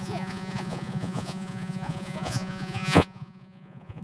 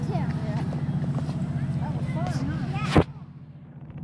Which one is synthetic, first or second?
first